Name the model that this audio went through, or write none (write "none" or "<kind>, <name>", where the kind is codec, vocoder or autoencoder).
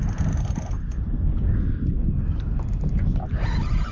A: none